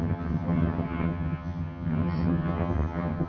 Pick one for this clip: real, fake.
fake